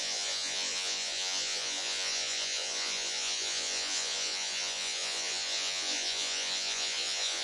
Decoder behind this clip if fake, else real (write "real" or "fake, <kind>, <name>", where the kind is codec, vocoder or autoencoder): fake, vocoder, Vocos